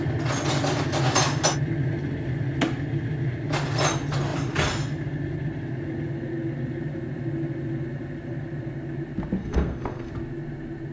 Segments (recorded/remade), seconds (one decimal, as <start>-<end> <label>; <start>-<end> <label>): 0.0-9.4 recorded; 9.4-10.1 remade; 10.1-10.9 recorded